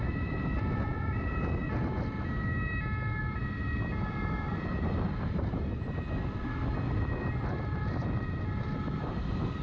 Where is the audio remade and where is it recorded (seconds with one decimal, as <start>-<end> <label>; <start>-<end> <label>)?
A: 0.0-1.6 remade; 1.6-3.2 recorded; 3.2-9.6 remade